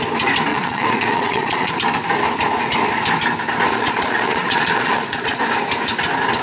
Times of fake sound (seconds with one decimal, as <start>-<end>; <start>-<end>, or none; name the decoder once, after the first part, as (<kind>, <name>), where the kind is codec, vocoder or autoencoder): 0.5-1.7 (vocoder, Vocos); 3.7-5.4